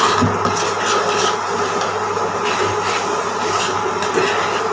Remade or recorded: recorded